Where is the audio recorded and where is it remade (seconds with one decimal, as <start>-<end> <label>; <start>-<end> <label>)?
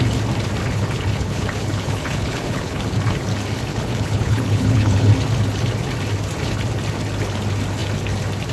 0.0-0.6 recorded; 0.6-2.8 remade; 2.8-3.7 recorded; 3.7-5.1 remade; 5.1-8.5 recorded